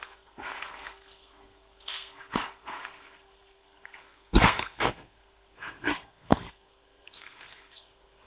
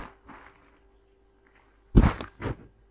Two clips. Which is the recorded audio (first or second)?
second